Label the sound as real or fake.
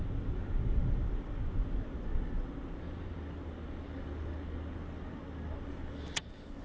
real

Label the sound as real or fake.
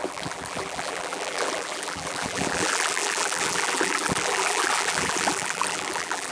fake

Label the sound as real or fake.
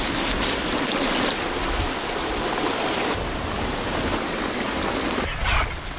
real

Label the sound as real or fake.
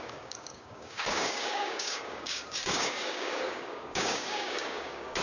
fake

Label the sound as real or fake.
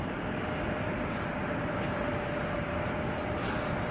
real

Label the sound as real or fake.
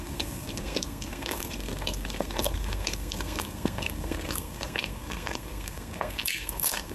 fake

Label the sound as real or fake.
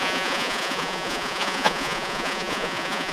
fake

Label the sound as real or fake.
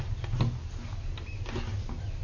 real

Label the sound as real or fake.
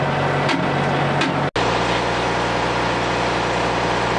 real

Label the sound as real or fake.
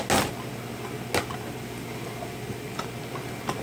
real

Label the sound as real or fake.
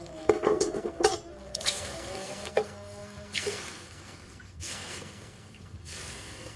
fake